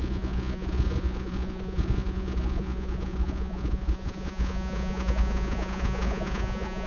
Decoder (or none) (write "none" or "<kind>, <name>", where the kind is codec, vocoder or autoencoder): vocoder, Vocos